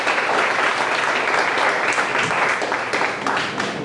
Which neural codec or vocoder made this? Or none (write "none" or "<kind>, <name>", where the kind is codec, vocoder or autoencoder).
none